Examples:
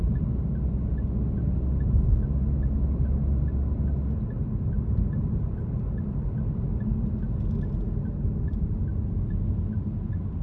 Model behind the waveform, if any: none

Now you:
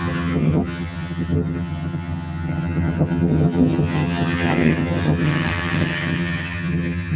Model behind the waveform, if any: vocoder, HiFi-GAN